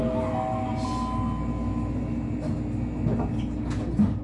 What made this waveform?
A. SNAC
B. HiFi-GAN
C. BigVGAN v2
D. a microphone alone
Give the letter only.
D